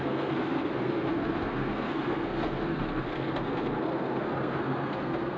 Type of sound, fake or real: fake